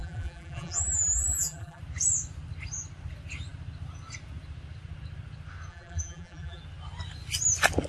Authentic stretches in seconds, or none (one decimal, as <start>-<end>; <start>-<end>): 1.8-5.7; 6.6-7.9